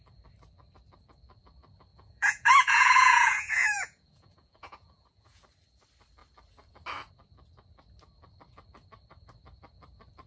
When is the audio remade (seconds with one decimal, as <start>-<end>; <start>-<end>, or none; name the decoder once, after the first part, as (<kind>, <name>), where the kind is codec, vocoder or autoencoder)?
1.9-5.4 (vocoder, Vocos)